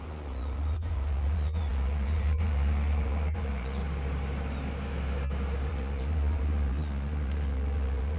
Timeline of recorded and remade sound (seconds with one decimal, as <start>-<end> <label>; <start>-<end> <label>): 0.0-3.8 remade; 3.8-5.7 recorded; 5.7-8.2 remade